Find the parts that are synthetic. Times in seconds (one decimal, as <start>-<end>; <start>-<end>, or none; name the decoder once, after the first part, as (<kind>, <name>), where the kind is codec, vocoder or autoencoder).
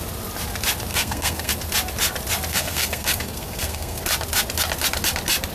0.9-1.5 (codec, SNAC); 2.5-4.0